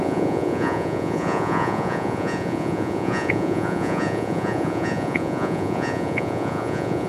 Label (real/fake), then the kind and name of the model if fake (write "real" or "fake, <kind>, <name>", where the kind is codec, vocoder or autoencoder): fake, vocoder, Vocos